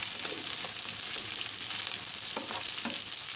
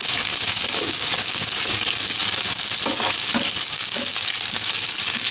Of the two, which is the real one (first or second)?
first